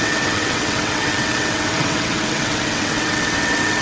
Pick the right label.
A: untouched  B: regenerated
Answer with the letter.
B